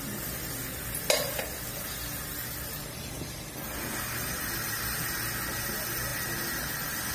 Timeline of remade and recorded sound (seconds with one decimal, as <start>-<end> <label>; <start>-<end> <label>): 0.0-7.1 recorded